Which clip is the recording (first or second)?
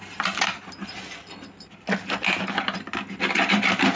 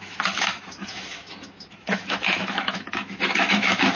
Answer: first